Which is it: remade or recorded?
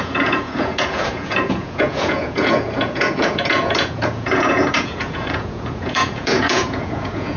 remade